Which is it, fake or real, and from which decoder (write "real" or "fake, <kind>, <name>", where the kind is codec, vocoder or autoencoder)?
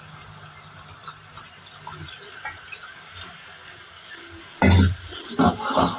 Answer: real